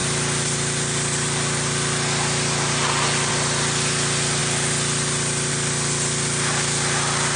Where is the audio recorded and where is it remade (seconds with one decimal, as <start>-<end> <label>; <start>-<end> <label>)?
0.0-7.4 recorded